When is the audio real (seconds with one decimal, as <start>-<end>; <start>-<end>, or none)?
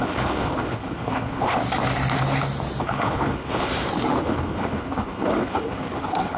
1.6-2.8; 3.7-4.2